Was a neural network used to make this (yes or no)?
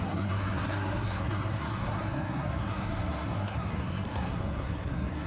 yes